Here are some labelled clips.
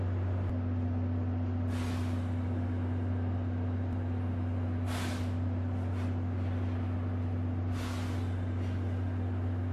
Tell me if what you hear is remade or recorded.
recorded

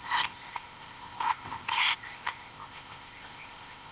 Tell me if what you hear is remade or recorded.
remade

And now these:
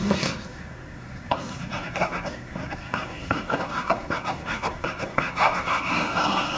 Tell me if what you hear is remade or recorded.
remade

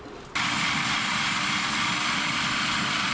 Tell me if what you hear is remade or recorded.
recorded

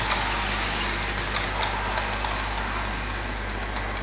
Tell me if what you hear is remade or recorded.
recorded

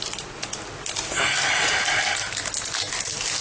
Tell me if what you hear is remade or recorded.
recorded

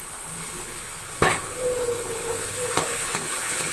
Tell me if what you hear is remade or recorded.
remade